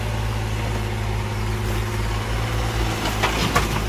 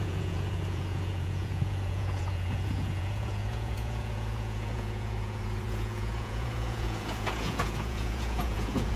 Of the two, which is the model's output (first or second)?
second